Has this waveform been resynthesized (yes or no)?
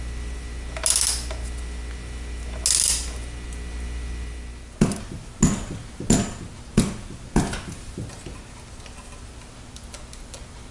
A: no